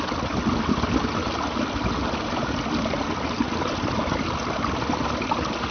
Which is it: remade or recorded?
recorded